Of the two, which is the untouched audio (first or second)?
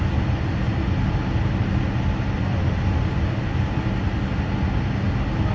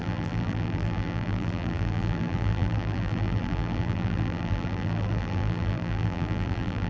first